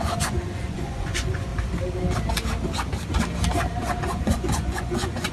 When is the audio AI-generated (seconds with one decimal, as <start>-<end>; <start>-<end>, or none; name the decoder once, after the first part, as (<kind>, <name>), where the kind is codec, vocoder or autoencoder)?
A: 0.0-1.5 (vocoder, Vocos); 4.0-5.3

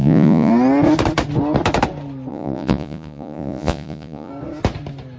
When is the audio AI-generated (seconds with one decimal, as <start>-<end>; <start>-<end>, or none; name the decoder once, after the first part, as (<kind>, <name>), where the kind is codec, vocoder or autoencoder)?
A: 0.0-0.5 (vocoder, Vocos); 2.3-4.3

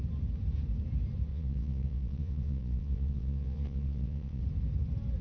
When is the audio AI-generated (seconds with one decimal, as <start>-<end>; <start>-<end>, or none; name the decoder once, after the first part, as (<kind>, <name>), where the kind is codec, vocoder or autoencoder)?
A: 1.3-4.4 (vocoder, Vocos)